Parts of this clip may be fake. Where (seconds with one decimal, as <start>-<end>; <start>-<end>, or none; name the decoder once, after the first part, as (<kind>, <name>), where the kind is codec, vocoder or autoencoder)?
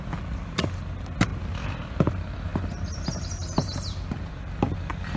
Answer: none